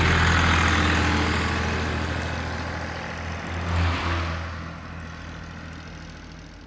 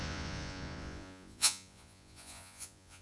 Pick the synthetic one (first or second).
second